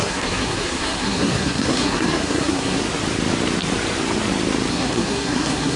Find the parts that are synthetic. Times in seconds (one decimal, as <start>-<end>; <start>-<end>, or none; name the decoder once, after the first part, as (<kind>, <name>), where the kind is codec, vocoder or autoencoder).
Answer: 0.0-2.8 (codec, SNAC); 4.7-5.8